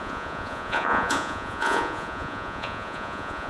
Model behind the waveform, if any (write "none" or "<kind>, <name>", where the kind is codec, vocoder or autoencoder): vocoder, Vocos